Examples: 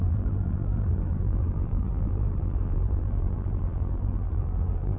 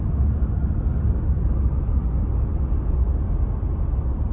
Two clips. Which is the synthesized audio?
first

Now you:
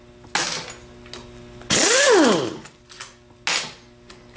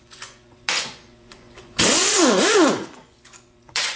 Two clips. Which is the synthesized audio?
second